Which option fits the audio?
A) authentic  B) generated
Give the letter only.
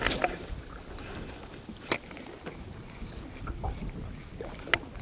A